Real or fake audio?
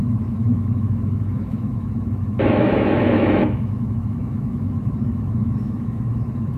fake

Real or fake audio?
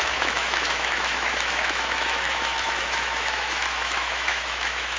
fake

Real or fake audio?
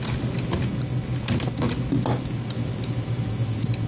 real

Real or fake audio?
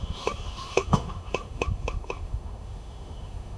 fake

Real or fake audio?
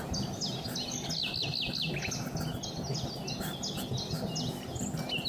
real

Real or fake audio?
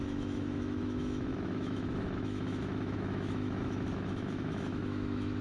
fake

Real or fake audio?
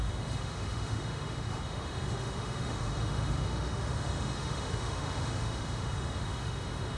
fake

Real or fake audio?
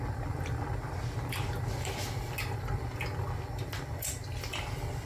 real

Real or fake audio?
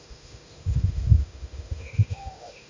fake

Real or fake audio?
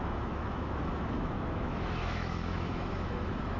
fake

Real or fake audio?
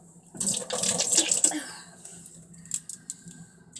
real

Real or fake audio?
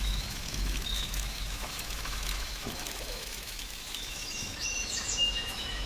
fake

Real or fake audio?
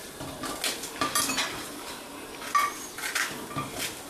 real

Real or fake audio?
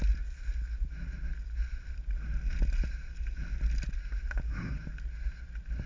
real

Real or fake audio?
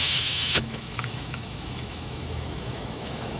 fake